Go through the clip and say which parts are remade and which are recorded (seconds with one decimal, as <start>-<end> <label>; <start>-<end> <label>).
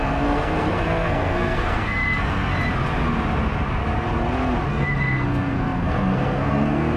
0.0-2.5 remade; 2.5-4.7 recorded; 4.7-7.0 remade